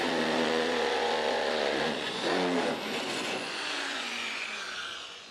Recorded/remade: remade